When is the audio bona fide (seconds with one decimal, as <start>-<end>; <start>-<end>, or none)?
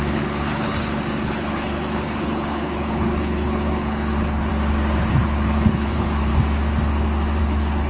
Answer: 4.5-5.1; 6.3-7.4